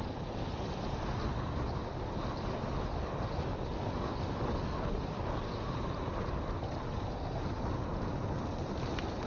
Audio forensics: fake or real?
real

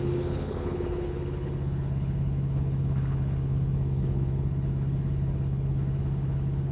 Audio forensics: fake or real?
fake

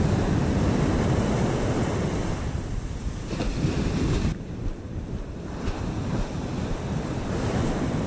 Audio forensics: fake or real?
fake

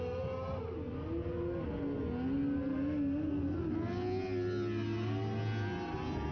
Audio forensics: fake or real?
real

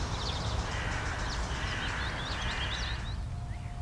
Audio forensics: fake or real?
real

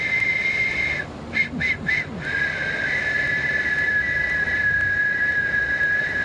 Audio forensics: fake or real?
fake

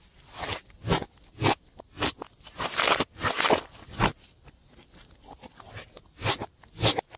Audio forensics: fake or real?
real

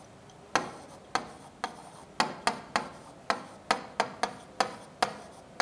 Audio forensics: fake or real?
real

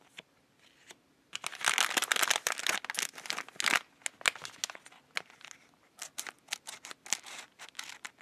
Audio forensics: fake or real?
real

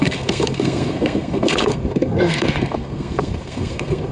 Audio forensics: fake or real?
fake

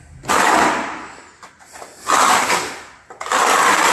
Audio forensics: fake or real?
real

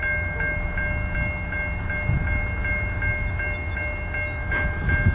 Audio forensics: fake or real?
real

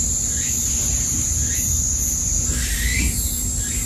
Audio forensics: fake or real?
real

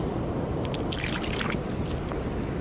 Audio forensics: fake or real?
real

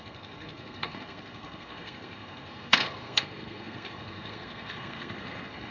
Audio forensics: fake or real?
fake